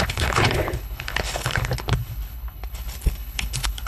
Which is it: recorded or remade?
remade